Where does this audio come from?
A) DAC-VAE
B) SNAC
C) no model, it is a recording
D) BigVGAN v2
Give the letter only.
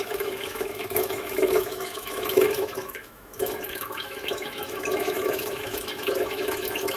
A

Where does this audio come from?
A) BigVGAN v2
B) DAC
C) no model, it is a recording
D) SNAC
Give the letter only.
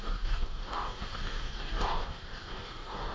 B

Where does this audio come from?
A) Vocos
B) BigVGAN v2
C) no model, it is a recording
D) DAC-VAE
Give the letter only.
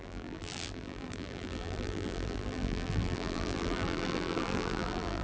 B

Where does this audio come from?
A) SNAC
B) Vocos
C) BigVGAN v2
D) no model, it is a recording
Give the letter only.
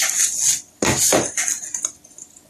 D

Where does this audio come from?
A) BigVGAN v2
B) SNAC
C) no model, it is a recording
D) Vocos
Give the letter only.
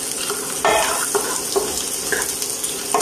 C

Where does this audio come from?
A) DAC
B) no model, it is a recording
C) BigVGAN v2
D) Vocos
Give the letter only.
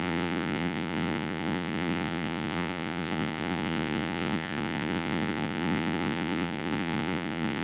D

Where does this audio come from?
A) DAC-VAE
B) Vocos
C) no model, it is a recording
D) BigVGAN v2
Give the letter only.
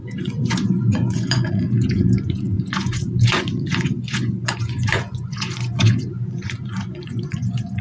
B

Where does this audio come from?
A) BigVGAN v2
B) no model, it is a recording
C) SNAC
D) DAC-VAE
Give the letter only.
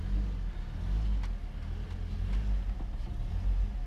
B